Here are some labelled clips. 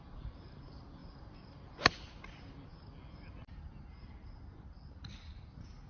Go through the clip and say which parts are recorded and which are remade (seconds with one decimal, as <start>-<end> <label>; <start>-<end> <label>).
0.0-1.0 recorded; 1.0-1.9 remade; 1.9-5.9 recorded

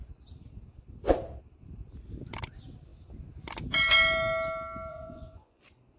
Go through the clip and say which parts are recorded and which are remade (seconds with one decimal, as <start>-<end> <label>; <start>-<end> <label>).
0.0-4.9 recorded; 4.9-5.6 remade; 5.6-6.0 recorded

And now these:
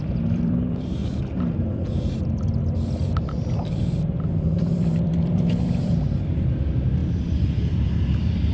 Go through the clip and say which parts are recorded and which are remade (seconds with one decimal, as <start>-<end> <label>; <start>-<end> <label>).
0.0-1.0 remade; 1.0-4.4 recorded; 4.4-7.0 remade; 7.0-8.5 recorded

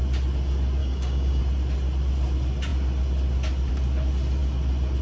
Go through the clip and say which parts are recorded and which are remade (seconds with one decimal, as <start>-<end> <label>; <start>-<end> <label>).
0.0-0.8 recorded; 0.8-1.4 remade; 1.4-5.0 recorded

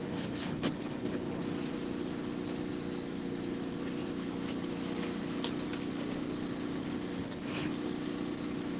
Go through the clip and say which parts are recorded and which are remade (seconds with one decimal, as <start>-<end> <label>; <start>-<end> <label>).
0.0-1.4 remade; 1.4-7.2 recorded; 7.2-7.7 remade; 7.7-8.8 recorded